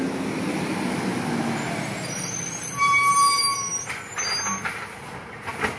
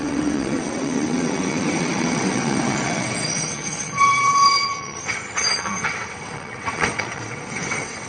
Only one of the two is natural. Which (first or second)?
first